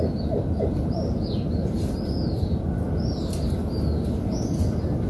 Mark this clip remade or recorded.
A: recorded